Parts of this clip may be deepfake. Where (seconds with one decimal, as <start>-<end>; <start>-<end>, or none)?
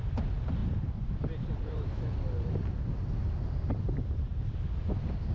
none